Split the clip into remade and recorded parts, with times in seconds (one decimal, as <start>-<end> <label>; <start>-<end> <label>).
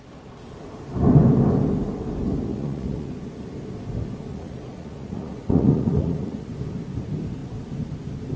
0.0-2.5 recorded; 2.5-3.1 remade; 3.1-4.3 recorded; 4.3-6.5 remade; 6.5-8.4 recorded